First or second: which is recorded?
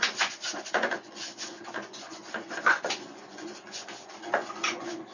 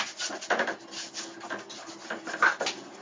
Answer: second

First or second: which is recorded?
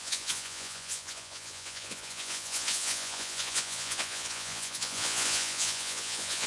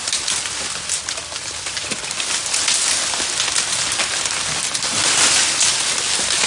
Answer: second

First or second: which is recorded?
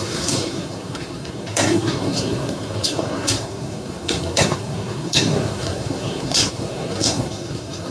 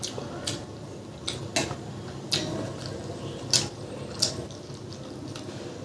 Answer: second